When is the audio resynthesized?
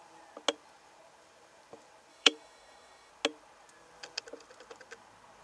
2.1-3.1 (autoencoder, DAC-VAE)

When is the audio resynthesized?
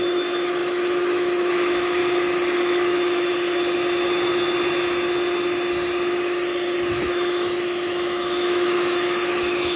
0.0-2.0 (autoencoder, DAC-VAE); 2.6-3.3; 6.9-9.8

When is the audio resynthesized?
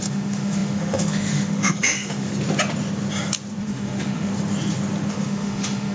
0.0-2.3 (autoencoder, DAC-VAE); 3.6-4.3; 5.1-5.9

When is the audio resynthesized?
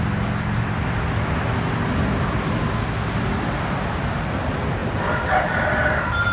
none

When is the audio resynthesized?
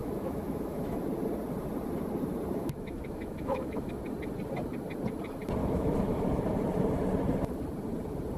0.0-1.0 (autoencoder, DAC-VAE); 2.6-3.9; 5.6-6.2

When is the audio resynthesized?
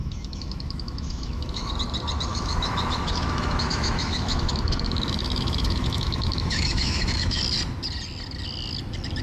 0.0-1.7 (autoencoder, DAC-VAE); 2.3-7.4